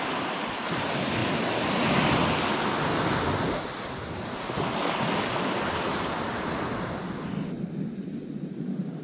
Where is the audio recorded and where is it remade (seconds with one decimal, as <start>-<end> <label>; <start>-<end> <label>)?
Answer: 0.0-9.0 recorded